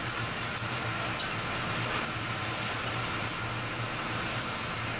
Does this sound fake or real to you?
real